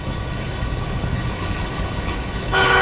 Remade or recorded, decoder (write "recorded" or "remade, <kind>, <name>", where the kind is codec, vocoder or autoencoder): remade, codec, HILCodec